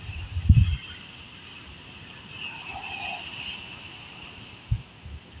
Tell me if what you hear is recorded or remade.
recorded